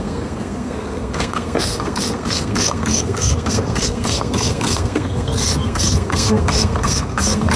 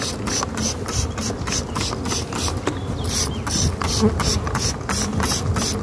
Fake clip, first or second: first